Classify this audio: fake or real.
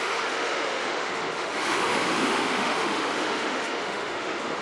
fake